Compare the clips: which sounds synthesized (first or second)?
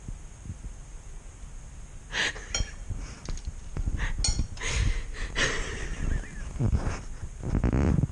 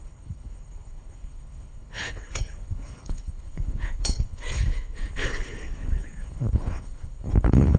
second